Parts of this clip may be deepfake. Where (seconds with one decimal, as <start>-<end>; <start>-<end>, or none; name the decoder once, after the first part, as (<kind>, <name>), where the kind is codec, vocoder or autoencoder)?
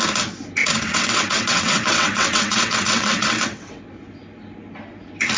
0.6-3.8 (vocoder, WaveNeXt)